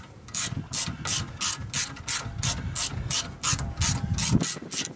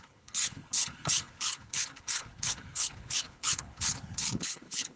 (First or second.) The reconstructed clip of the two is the second